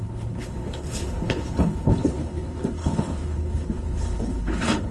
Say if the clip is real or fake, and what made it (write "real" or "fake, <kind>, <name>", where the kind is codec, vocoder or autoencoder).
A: fake, codec, HILCodec